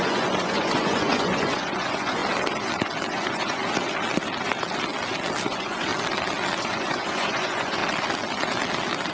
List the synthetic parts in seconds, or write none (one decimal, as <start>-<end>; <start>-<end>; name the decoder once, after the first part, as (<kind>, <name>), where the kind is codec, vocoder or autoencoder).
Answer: 0.0-2.2 (vocoder, Vocos); 3.1-3.6; 5.5-5.9; 6.6-7.8